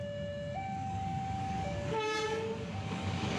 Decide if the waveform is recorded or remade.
remade